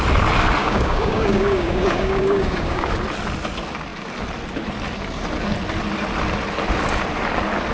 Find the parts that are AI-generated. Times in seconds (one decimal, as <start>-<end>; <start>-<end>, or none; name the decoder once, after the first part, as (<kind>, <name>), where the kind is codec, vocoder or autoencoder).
0.6-2.9 (codec, DAC)